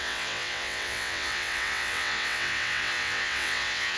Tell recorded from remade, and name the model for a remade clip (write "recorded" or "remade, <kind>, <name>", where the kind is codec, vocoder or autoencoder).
remade, vocoder, WaveNeXt